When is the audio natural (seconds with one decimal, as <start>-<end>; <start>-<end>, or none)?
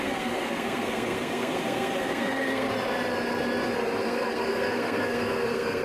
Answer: 2.7-4.0